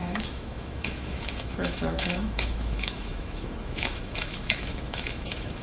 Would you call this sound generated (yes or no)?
yes